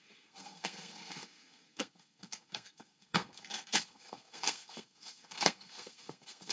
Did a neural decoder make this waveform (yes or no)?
yes